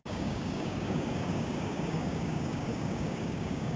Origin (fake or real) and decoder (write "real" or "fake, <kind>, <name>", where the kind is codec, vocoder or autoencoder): fake, codec, DAC